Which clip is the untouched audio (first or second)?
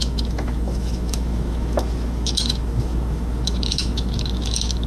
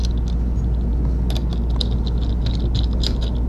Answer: second